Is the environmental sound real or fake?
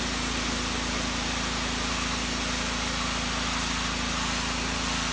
real